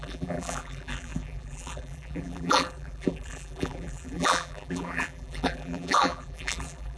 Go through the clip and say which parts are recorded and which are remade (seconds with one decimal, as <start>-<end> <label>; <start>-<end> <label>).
0.0-7.0 remade